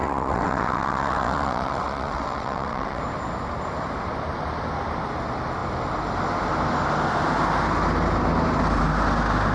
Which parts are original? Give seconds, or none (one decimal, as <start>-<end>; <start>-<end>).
3.0-9.5